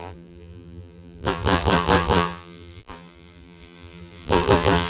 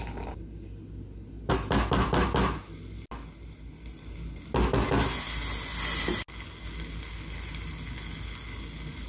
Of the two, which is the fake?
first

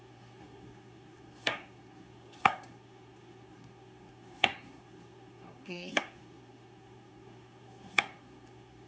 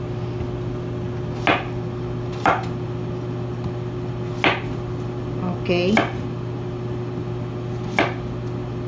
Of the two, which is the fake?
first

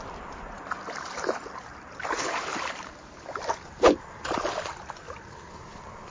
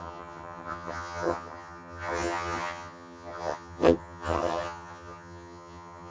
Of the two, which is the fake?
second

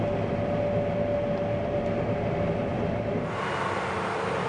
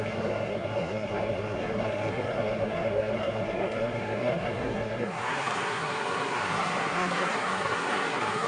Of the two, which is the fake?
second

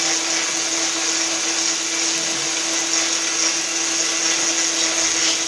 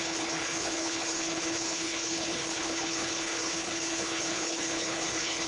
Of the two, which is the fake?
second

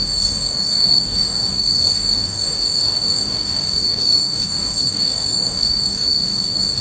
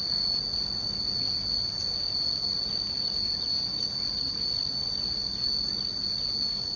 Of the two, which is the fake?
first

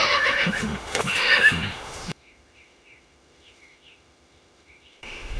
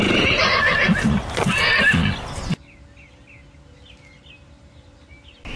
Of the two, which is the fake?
first